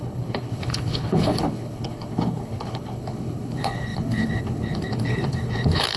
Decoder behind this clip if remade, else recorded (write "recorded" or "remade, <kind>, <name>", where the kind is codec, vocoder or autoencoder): remade, codec, HILCodec